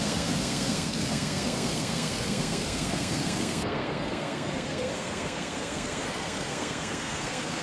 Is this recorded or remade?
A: remade